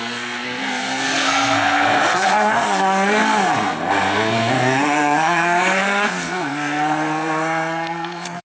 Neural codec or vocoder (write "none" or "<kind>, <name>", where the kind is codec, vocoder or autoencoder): codec, SNAC